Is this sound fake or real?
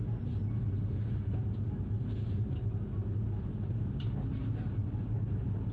real